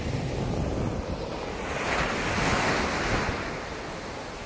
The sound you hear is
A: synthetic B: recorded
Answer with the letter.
B